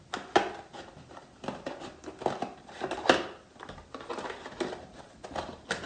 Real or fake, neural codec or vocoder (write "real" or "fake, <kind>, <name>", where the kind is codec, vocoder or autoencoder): real